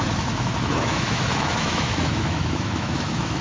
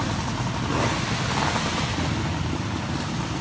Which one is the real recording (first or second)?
second